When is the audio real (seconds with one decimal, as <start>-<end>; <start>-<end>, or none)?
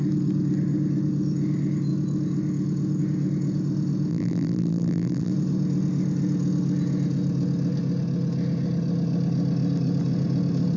0.0-4.1; 5.3-10.8